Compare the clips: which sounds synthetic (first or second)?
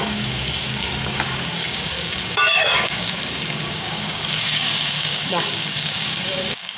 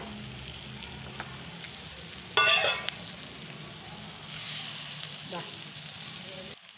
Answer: first